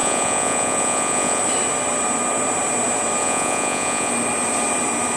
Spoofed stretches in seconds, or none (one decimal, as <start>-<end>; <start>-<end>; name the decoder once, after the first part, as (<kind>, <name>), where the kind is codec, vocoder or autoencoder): 0.0-1.4 (vocoder, Vocos); 3.2-4.1